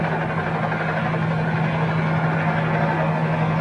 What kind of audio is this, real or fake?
real